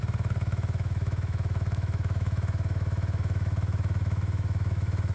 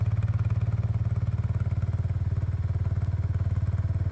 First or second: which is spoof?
first